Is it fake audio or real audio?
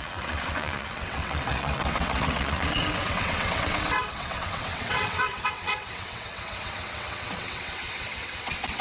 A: fake